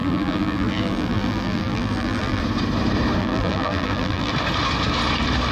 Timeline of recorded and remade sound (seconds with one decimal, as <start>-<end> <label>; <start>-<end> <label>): 0.0-2.4 remade; 2.4-3.2 recorded; 3.2-4.3 remade; 4.3-5.5 recorded